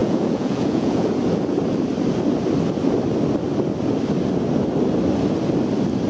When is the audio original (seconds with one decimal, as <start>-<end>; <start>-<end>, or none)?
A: 1.1-6.1